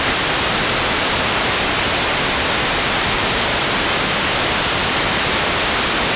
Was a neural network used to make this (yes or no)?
yes